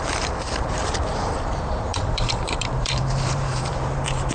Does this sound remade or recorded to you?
remade